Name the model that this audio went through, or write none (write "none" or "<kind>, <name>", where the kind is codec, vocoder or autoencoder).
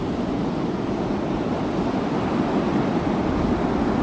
none